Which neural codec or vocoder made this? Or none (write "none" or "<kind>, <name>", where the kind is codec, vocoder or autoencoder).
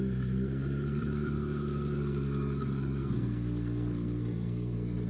codec, SNAC